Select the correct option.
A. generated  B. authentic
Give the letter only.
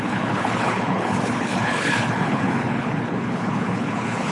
A